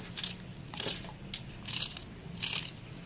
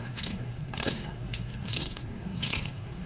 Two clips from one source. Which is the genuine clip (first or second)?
first